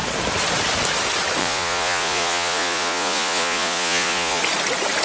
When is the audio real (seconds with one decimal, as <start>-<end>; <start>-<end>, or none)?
0.0-1.4; 4.4-5.0